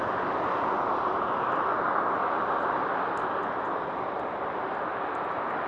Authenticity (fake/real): real